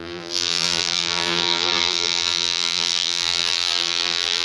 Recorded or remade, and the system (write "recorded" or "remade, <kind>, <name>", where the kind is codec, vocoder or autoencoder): remade, vocoder, BigVGAN v2